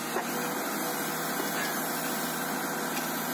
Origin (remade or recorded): recorded